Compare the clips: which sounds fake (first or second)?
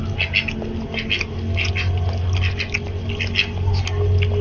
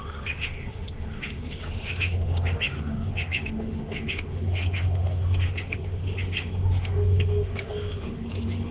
second